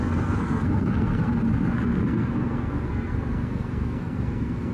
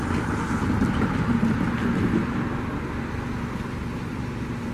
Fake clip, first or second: first